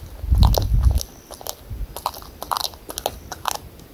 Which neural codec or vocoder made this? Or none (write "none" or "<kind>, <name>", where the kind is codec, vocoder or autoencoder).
none